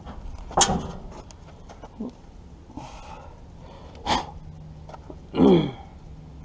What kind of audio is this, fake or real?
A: real